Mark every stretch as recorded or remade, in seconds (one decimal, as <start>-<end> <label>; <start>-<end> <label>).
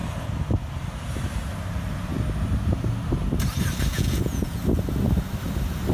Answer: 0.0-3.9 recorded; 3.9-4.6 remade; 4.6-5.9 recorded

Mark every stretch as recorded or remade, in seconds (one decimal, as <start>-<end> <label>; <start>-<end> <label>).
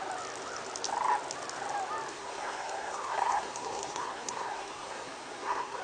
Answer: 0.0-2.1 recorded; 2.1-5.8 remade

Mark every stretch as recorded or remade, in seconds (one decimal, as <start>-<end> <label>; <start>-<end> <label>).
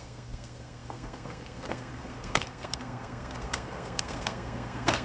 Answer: 0.0-5.0 remade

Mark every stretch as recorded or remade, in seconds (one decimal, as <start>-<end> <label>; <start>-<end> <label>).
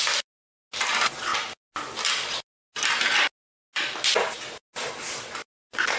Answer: 0.0-6.0 recorded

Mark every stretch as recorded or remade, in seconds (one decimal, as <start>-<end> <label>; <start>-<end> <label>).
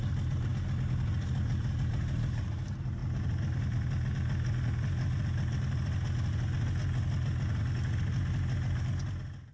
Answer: 0.0-9.5 recorded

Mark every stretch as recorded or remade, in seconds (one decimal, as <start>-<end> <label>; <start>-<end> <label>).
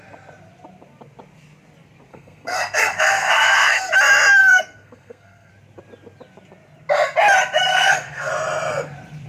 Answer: 0.0-2.1 recorded; 2.1-3.9 remade; 3.9-4.4 recorded; 4.4-5.5 remade; 5.5-7.7 recorded; 7.7-8.3 remade; 8.3-9.3 recorded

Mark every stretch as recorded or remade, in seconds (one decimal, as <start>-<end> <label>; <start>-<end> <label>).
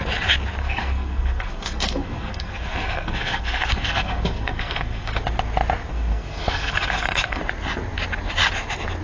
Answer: 0.0-0.6 recorded; 0.6-5.2 remade; 5.2-5.9 recorded; 5.9-7.4 remade; 7.4-9.0 recorded